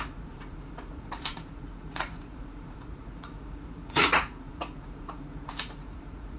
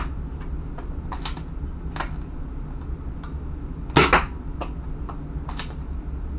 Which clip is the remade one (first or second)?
first